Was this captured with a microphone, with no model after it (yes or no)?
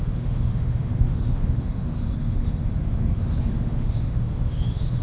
no